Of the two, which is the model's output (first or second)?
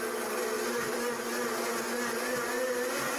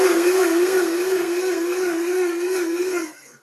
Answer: second